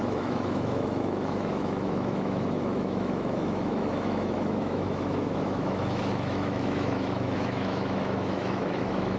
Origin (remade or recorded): remade